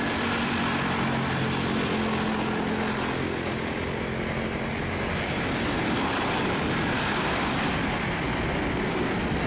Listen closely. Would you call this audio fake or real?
real